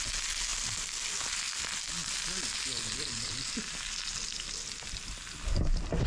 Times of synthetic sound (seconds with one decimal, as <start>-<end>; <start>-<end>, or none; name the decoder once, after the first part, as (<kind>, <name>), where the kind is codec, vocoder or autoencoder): none